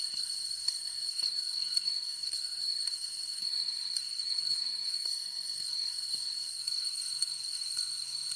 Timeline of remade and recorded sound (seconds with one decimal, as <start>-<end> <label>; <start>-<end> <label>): 0.0-8.4 remade